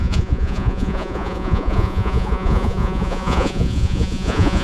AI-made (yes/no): yes